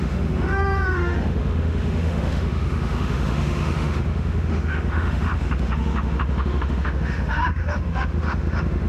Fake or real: fake